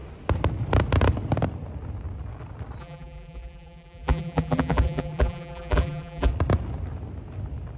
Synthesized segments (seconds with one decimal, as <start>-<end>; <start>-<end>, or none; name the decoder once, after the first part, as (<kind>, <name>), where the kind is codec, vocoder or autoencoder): 2.8-6.3 (vocoder, BigVGAN v2)